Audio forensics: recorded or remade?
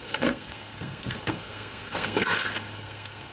remade